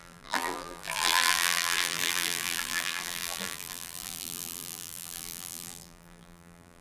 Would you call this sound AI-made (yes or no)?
yes